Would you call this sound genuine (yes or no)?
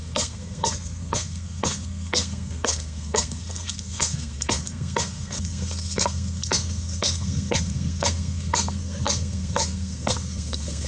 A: no